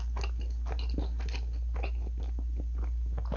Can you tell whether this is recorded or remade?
recorded